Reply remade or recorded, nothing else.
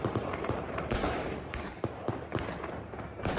remade